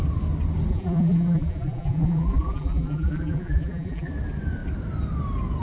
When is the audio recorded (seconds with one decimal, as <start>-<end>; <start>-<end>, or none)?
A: 0.0-0.7; 4.1-5.6